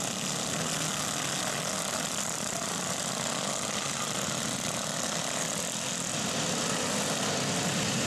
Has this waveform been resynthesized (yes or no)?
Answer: no